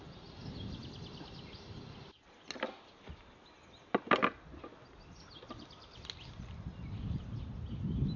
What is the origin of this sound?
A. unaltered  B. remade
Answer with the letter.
A